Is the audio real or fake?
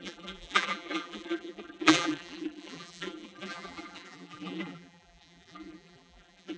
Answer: fake